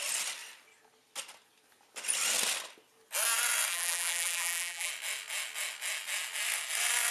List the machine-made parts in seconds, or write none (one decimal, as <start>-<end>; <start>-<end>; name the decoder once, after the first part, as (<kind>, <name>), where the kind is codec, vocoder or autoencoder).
3.7-4.9 (vocoder, BigVGAN v2)